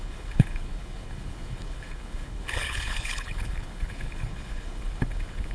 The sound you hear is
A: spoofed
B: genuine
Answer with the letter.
A